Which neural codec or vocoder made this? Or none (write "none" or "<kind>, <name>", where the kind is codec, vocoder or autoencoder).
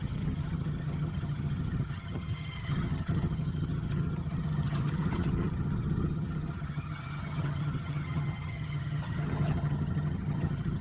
vocoder, HiFi-GAN